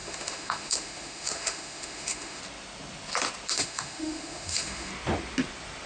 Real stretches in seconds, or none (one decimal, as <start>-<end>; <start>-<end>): 2.4-3.5; 4.9-5.9

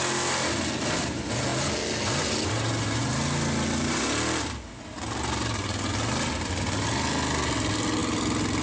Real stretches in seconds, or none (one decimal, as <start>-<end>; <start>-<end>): 0.0-8.6

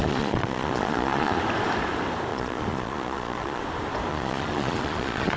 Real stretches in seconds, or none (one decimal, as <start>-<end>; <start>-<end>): 1.4-2.3; 3.6-4.1

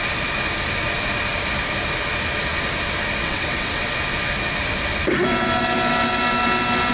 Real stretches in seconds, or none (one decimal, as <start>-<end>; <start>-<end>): 0.0-3.2; 3.9-6.9